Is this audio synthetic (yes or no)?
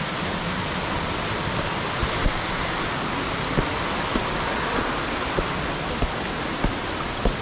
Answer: no